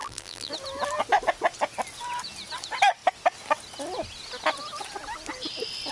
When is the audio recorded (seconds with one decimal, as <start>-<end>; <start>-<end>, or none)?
0.5-5.9